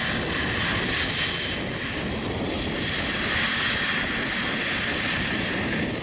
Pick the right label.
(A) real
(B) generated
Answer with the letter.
A